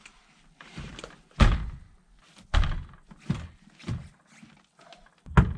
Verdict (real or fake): real